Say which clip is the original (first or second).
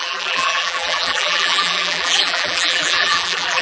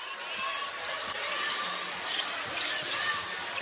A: second